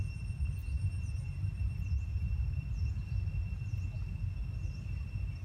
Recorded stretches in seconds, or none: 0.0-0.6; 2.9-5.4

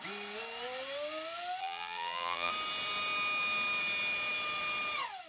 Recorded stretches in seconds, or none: 0.0-1.6; 2.5-5.3

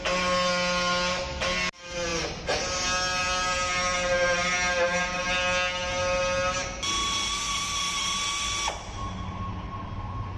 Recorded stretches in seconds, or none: 0.0-10.4

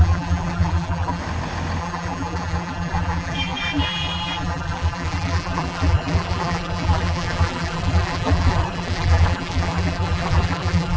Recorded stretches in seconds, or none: 1.2-1.8

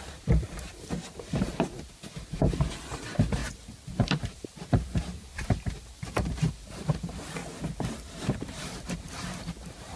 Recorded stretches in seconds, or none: 3.4-3.9; 7.4-8.2

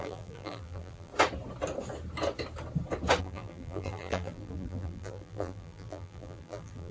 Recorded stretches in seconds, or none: 1.1-3.2

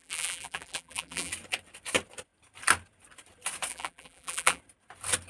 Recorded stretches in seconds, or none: 1.3-3.7; 4.6-5.3